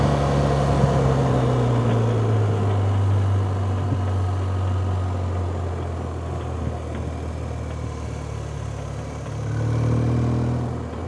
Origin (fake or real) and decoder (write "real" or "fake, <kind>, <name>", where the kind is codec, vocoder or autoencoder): real